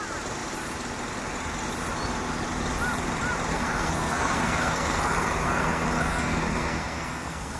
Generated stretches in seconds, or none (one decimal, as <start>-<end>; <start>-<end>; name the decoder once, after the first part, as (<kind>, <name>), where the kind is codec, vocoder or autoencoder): 3.5-7.6 (codec, SNAC)